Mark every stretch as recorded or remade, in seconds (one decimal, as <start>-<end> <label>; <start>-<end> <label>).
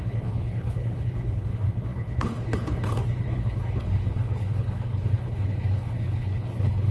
0.0-6.9 remade